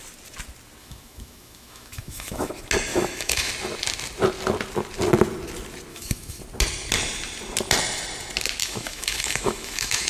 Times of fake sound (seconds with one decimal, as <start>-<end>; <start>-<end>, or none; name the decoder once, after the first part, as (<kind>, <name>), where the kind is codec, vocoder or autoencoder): 0.8-2.5 (autoencoder, DAC-VAE); 2.9-3.5; 5.9-6.4; 8.6-10.1